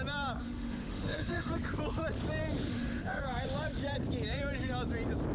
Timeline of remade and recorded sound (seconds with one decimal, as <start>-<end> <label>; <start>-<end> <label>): 0.0-0.4 recorded; 0.4-1.5 remade; 1.5-2.7 recorded; 2.7-3.2 remade; 3.2-5.3 recorded